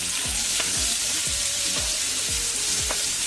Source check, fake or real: fake